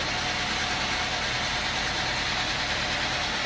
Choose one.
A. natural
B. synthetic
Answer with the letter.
A